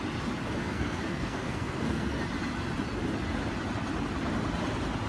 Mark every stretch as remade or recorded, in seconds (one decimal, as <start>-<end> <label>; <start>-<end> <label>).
0.0-0.6 recorded; 0.6-2.2 remade; 2.2-5.1 recorded